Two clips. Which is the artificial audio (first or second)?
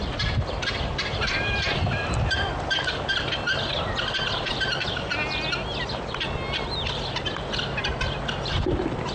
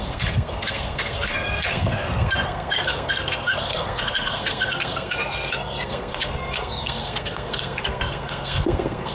second